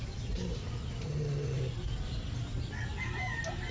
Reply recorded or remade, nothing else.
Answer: recorded